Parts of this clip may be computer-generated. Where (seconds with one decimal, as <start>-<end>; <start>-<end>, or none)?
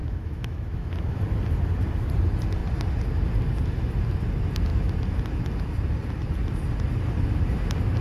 0.0-1.2